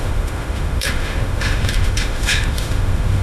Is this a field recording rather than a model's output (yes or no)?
no